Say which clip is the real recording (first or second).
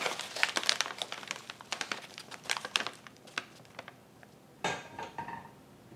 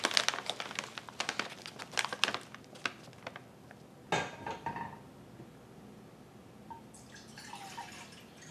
second